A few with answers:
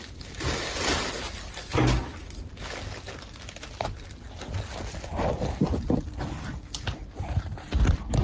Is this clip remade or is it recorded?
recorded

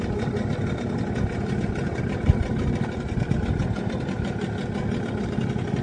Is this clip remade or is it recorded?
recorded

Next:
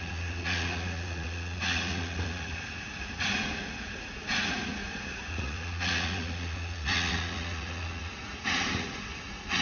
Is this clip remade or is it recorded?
remade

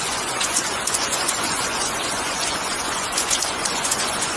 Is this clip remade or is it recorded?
remade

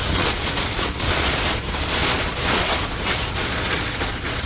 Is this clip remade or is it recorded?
remade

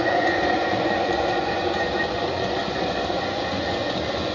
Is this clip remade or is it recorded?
remade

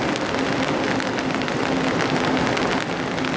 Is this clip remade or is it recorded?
recorded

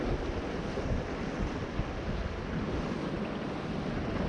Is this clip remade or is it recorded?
recorded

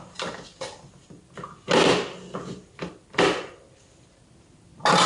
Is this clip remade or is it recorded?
recorded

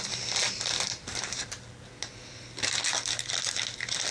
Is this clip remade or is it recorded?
recorded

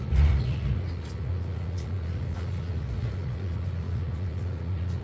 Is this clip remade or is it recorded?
remade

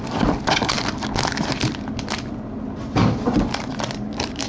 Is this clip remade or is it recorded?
recorded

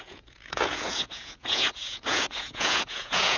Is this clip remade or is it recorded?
remade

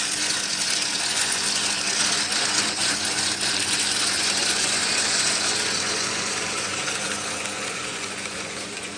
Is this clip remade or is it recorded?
remade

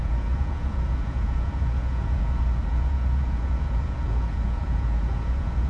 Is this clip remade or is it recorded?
remade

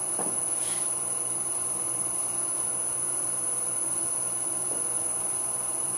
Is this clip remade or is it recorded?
remade